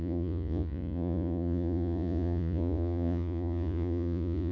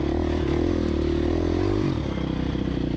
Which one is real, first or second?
second